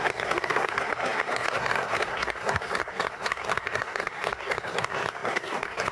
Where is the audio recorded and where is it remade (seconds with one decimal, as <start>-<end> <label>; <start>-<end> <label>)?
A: 0.0-5.9 remade